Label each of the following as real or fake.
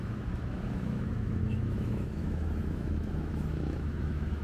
fake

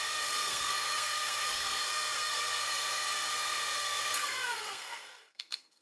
fake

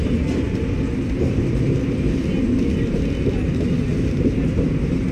real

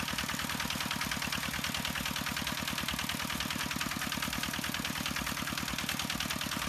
real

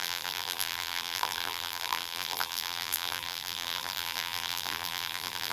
fake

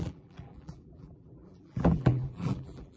fake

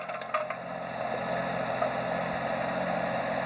real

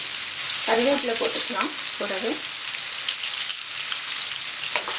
real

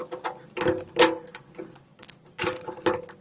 real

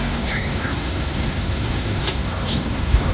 fake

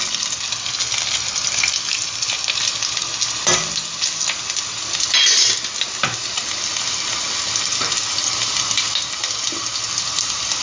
real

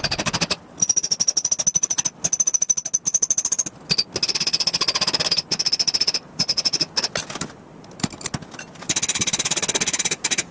real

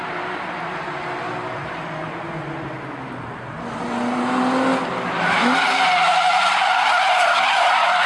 real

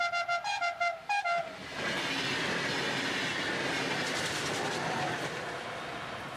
real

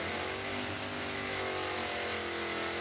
real